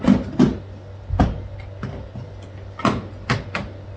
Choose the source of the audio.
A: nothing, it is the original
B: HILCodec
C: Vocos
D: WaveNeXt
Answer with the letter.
A